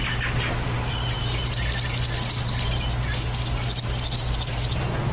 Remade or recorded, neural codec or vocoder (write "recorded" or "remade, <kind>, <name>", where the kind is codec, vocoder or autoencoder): recorded